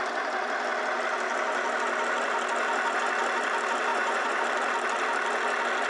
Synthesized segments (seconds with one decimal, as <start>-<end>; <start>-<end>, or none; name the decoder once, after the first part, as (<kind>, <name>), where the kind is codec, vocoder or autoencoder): 3.9-4.4 (vocoder, Vocos)